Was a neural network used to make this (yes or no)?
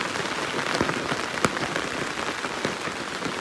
no